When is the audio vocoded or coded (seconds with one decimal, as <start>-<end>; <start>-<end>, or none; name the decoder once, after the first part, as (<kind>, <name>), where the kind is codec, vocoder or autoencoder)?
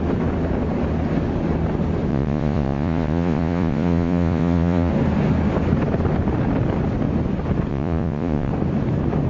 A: 2.1-4.9 (vocoder, Vocos); 7.7-8.5